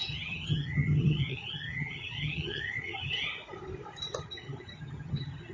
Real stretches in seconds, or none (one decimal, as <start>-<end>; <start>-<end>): 3.1-4.2